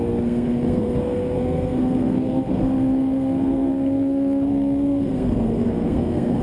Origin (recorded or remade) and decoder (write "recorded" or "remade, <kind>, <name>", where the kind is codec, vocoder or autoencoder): remade, codec, SNAC